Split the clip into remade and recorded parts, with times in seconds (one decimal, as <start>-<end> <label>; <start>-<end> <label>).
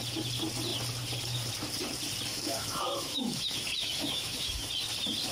0.0-2.3 recorded; 2.3-4.7 remade; 4.7-5.3 recorded